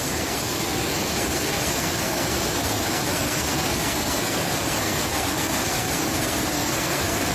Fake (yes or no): yes